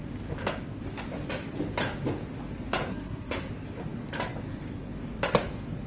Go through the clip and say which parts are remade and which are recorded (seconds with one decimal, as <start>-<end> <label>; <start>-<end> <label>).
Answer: 0.0-2.9 recorded; 2.9-3.5 remade; 3.5-5.9 recorded